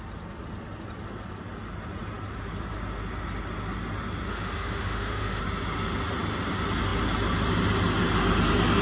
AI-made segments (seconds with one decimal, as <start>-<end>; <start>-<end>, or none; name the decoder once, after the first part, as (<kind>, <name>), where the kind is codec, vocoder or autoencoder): 4.3-5.4 (autoencoder, DAC-VAE)